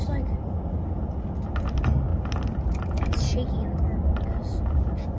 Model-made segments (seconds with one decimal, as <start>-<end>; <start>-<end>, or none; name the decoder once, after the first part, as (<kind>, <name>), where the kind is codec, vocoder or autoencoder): none